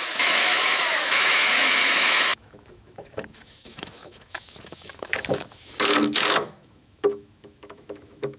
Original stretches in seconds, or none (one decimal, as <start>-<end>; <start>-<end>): none